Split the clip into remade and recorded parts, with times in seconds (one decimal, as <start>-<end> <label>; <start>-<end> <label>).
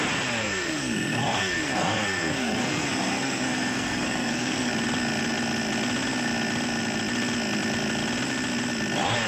0.0-0.4 recorded; 0.4-4.7 remade; 4.7-9.3 recorded